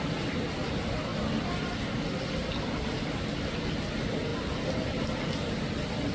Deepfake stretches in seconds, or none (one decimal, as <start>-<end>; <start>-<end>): none

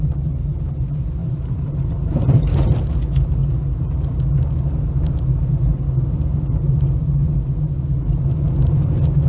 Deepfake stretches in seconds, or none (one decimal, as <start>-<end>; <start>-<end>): 1.2-2.3

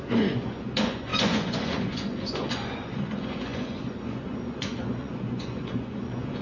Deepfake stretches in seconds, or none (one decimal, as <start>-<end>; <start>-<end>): 0.0-6.4